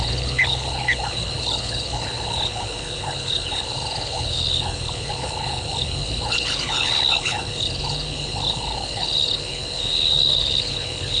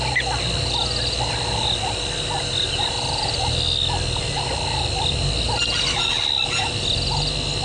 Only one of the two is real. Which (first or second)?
second